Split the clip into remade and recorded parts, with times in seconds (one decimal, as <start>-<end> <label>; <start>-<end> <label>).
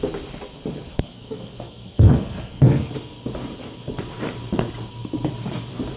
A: 0.0-0.9 recorded; 0.9-2.9 remade; 2.9-6.0 recorded